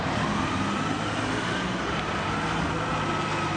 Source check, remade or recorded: recorded